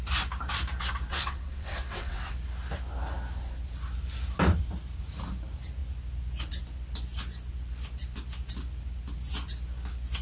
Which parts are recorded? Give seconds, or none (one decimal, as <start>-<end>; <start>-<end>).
0.0-1.1; 2.3-10.2